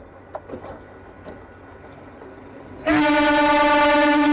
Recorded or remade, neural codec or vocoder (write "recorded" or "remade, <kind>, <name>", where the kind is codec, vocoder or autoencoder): recorded